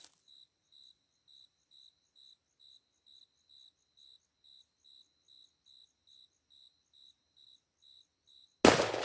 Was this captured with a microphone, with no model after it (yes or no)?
yes